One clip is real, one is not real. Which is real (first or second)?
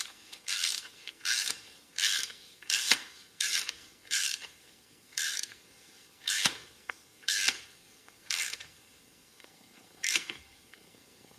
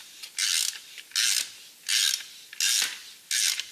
second